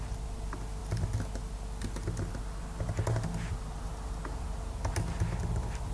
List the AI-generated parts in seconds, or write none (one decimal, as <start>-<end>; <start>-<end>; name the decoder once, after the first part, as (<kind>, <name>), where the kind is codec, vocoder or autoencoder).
none

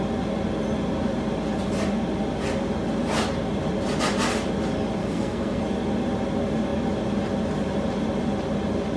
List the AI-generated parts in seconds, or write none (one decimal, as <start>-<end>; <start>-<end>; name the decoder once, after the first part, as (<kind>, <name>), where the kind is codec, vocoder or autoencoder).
5.0-5.6 (codec, SNAC)